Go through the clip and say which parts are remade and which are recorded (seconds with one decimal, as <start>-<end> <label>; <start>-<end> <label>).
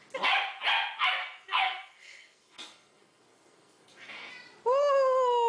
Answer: 0.0-1.2 recorded; 1.2-4.3 remade; 4.3-5.5 recorded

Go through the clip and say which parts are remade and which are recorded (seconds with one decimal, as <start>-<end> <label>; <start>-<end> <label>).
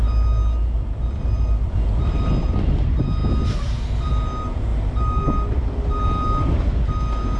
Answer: 0.0-7.4 recorded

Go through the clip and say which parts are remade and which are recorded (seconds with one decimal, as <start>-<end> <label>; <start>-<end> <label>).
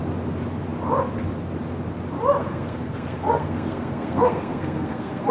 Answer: 0.0-2.4 recorded; 2.4-5.3 remade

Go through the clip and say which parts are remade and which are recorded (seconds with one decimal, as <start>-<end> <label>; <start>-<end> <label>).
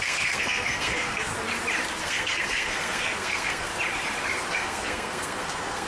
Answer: 0.0-1.3 remade; 1.3-2.0 recorded; 2.0-3.7 remade; 3.7-4.5 recorded; 4.5-5.9 remade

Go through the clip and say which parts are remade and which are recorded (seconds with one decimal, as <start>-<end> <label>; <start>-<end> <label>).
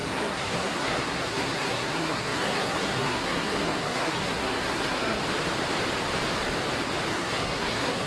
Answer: 0.0-5.2 remade; 5.2-7.1 recorded; 7.1-8.1 remade